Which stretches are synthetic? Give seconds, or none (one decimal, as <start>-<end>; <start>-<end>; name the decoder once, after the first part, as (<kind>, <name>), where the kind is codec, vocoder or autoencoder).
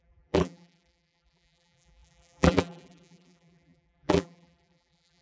0.0-5.2 (vocoder, BigVGAN v2)